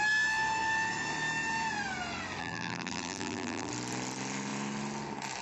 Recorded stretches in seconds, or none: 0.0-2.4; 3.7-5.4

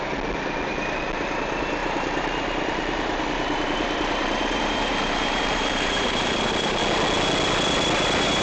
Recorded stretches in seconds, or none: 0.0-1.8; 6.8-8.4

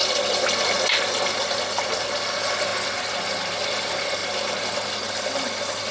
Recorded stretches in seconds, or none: 0.0-5.9

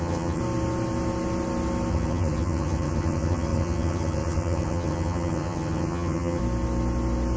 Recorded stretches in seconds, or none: 0.4-1.9; 6.4-7.4

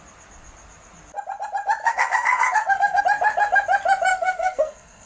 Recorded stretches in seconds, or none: 0.0-1.8; 3.0-4.1

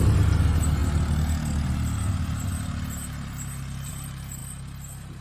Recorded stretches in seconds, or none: 0.0-5.2

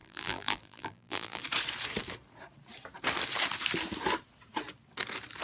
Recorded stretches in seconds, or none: 1.4-5.4